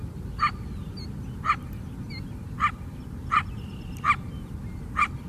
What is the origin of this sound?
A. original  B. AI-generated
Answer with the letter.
A